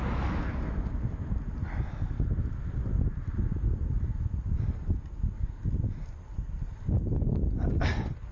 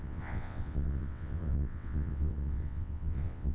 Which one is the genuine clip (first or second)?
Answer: first